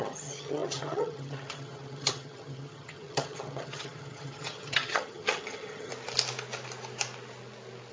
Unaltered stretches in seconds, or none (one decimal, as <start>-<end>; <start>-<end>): 5.9-7.9